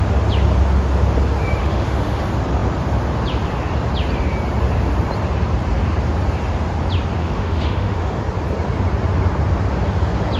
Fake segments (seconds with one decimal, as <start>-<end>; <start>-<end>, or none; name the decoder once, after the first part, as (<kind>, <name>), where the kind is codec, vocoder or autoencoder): 1.6-2.2 (autoencoder, DAC-VAE); 7.2-8.2

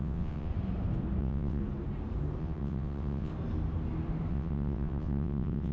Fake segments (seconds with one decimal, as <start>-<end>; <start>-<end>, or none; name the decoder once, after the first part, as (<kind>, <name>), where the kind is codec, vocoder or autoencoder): 0.0-0.5 (vocoder, WaveNeXt); 1.2-1.6; 2.4-3.3; 4.3-5.7

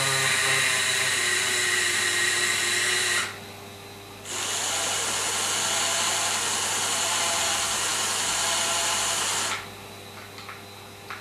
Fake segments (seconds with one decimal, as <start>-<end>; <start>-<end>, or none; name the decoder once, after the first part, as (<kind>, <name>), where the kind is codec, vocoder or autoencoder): none